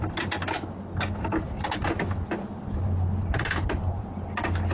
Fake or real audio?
real